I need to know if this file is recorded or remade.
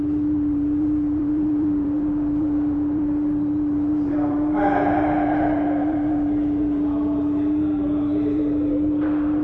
remade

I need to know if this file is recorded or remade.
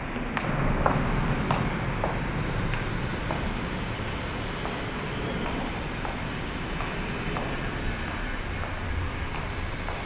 recorded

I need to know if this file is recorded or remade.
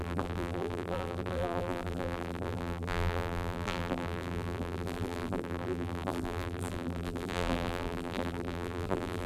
remade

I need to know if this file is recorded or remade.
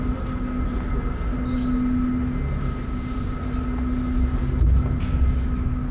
recorded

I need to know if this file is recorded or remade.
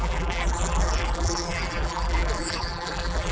remade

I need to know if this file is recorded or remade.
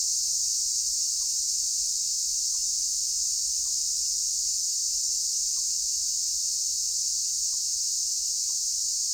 recorded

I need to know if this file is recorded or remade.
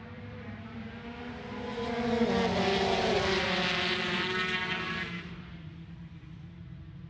remade